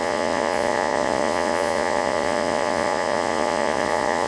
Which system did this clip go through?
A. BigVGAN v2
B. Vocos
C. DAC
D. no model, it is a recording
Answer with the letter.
B